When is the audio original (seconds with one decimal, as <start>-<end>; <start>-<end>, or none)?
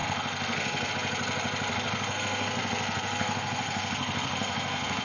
0.9-1.7